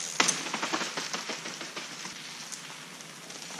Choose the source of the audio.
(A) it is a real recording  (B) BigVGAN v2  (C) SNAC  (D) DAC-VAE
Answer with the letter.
A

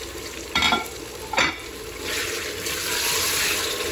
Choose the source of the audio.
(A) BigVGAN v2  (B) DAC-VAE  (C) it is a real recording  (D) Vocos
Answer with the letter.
C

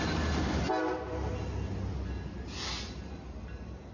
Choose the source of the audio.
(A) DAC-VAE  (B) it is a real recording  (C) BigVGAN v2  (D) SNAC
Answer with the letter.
B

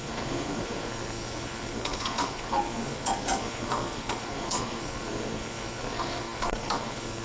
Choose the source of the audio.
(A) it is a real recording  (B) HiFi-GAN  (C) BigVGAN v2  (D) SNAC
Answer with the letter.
D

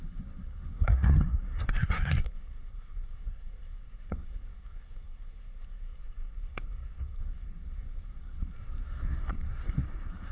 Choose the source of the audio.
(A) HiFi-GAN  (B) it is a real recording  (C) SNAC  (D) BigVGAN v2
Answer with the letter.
C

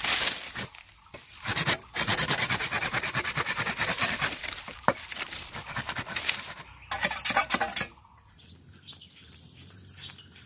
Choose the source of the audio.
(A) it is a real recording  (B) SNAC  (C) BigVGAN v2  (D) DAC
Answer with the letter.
C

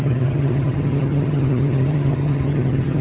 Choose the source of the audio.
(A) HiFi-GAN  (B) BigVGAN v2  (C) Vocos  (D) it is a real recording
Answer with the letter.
A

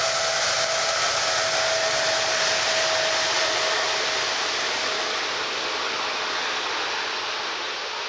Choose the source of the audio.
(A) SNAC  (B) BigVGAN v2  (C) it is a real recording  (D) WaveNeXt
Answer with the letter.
C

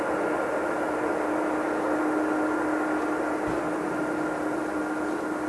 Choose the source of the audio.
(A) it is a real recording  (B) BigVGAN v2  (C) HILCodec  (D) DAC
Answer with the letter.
A